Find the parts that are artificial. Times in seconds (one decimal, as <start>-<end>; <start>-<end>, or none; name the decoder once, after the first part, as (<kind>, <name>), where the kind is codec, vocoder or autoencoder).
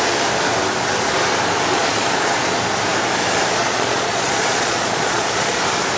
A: 1.7-2.3 (vocoder, Vocos); 3.6-5.5